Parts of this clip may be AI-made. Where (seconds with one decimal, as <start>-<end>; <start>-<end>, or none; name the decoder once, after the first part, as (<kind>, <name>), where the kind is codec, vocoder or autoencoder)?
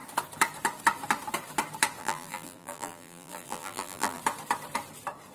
2.0-4.2 (vocoder, BigVGAN v2)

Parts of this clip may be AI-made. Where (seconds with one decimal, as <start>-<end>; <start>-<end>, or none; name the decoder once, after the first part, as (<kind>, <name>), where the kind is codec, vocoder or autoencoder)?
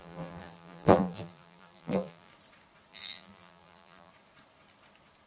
0.0-2.3 (vocoder, BigVGAN v2); 2.9-4.1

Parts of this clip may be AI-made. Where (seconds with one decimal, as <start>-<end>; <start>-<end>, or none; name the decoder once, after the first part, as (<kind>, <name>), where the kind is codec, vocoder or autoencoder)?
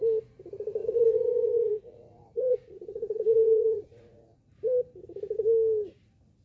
0.8-4.4 (vocoder, Vocos)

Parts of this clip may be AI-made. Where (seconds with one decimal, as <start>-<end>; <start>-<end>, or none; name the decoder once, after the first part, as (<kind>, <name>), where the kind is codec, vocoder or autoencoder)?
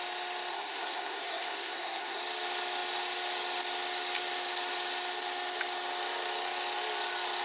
0.5-2.2 (codec, SNAC)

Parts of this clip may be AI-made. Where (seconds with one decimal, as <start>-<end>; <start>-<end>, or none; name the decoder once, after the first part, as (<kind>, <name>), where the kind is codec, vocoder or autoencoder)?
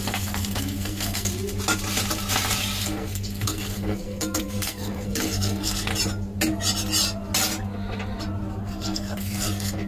0.0-1.3 (codec, SNAC); 2.8-5.9; 8.6-9.9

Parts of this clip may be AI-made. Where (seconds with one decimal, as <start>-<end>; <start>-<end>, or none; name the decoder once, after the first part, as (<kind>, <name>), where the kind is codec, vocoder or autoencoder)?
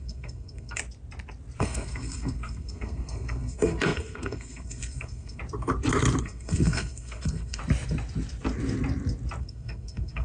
0.0-0.8 (codec, SNAC); 1.6-5.4; 6.2-7.6; 9.4-10.2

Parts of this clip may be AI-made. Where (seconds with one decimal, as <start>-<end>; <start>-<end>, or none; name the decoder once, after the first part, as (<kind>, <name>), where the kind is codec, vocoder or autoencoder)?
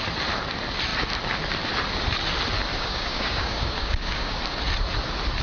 2.7-4.3 (codec, DAC)